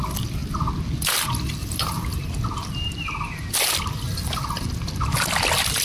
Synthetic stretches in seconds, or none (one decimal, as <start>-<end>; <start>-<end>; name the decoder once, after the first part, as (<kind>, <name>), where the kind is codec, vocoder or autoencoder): 1.6-2.3 (vocoder, BigVGAN v2)